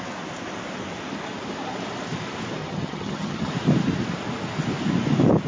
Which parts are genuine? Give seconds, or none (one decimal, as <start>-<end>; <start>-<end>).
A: 0.0-2.6; 3.5-5.5